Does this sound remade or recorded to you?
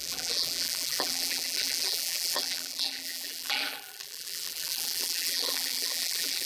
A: remade